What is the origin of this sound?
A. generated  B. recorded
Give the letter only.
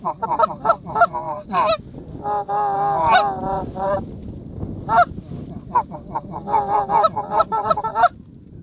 B